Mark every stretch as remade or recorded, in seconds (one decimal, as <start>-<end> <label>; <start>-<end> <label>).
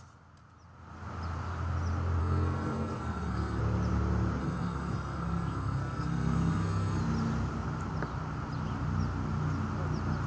0.0-2.2 recorded; 2.2-3.6 remade; 3.6-4.4 recorded; 4.4-7.0 remade; 7.0-10.3 recorded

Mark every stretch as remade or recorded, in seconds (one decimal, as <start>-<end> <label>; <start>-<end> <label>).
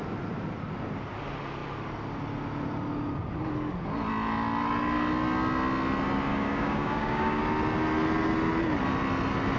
0.0-6.3 recorded; 6.3-7.4 remade; 7.4-9.6 recorded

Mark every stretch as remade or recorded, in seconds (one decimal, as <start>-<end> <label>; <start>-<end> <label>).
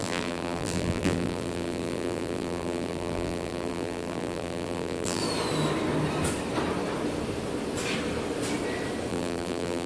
0.0-5.2 remade; 5.2-9.1 recorded; 9.1-9.9 remade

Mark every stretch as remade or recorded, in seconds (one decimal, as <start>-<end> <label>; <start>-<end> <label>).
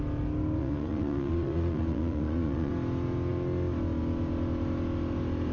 0.0-0.6 recorded; 0.6-2.7 remade; 2.7-5.5 recorded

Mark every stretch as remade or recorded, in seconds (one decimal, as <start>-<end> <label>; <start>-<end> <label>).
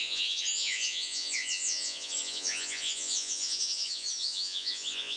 0.0-5.2 remade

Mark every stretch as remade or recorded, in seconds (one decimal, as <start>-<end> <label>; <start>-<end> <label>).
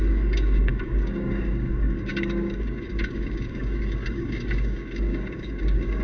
0.0-6.0 remade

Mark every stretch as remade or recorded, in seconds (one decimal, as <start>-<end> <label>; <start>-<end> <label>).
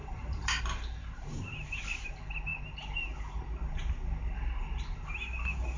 0.0-0.6 remade; 0.6-5.8 recorded